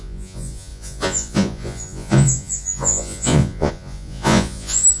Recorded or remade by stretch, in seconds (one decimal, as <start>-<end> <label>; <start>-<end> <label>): 0.0-5.0 remade